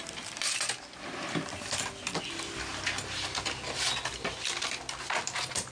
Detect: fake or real real